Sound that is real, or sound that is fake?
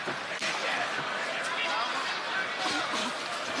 real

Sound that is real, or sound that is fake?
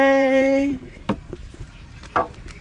fake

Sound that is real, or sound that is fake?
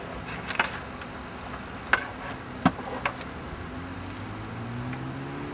real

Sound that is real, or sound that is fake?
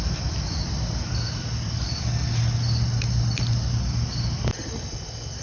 real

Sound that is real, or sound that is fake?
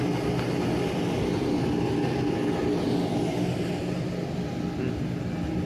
real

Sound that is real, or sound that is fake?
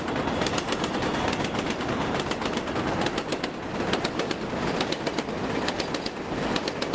real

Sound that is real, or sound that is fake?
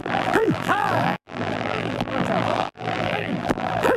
fake